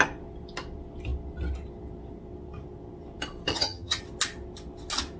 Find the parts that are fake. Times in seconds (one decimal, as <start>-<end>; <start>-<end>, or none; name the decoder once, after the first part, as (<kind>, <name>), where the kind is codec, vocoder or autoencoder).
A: 3.5-4.0 (vocoder, HiFi-GAN)